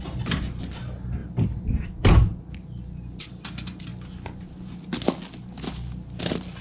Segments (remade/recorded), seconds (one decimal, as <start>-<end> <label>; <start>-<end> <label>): 0.0-6.6 recorded

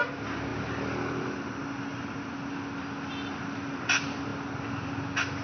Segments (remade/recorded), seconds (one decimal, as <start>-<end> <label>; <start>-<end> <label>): 0.0-5.4 recorded

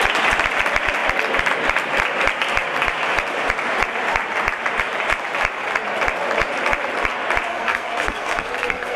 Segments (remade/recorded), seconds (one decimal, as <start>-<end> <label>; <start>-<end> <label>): 0.0-7.5 recorded; 7.5-9.0 remade

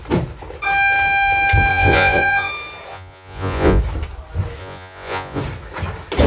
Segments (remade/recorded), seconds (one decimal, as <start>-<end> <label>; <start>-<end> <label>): 0.0-1.7 recorded; 1.7-2.5 remade; 2.5-2.9 recorded; 2.9-3.8 remade; 3.8-4.6 recorded; 4.6-5.4 remade; 5.4-6.3 recorded

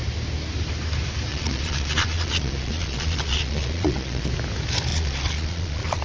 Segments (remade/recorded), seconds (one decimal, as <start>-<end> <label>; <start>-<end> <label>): 0.0-1.3 recorded; 1.3-4.3 remade; 4.3-4.9 recorded; 4.9-6.0 remade